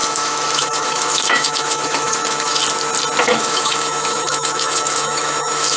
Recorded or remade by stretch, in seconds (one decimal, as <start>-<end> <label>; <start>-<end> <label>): 0.0-2.6 remade; 2.6-3.2 recorded; 3.2-5.8 remade